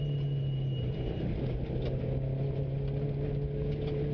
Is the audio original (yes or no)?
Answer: yes